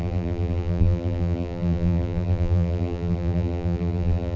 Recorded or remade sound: remade